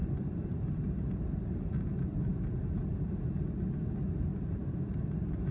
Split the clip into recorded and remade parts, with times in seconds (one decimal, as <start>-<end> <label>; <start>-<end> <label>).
0.0-3.3 remade; 3.3-4.3 recorded; 4.3-5.0 remade; 5.0-5.5 recorded